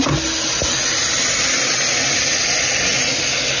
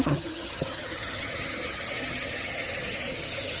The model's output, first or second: second